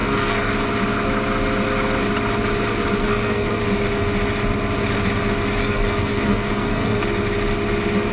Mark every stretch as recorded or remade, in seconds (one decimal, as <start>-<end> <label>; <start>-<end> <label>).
0.0-0.5 remade; 0.5-3.0 recorded; 3.0-3.6 remade; 3.6-5.6 recorded; 5.6-7.0 remade; 7.0-8.1 recorded